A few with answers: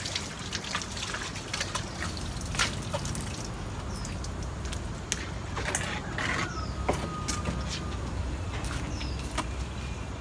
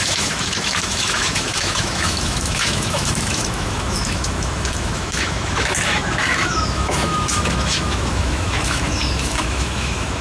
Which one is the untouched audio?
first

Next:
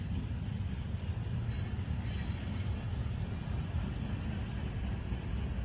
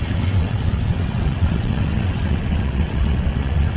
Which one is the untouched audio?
first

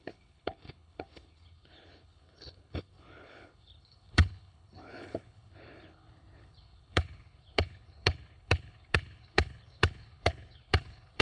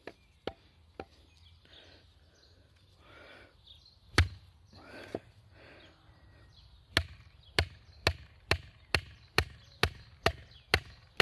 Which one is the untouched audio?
second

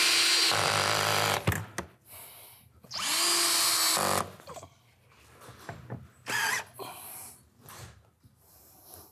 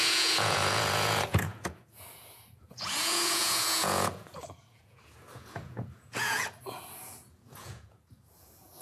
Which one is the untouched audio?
first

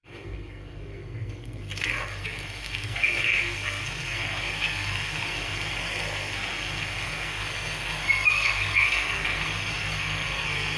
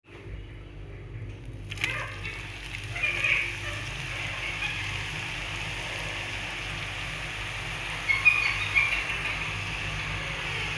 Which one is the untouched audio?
second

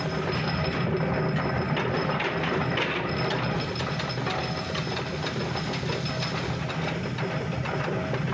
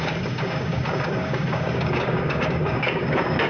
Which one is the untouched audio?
first